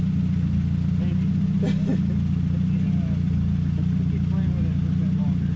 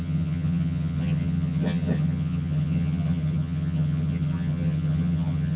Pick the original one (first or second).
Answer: first